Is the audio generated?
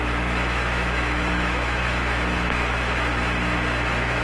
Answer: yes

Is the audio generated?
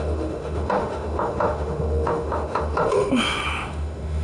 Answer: yes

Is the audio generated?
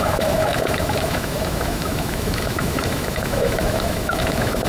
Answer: yes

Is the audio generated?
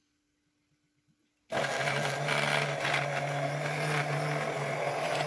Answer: no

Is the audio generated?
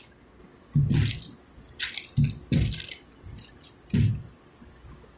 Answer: no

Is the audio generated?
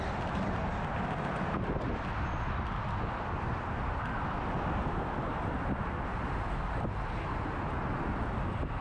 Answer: no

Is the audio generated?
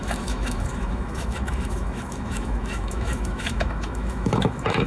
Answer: yes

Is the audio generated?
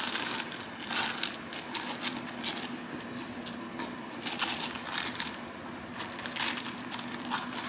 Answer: no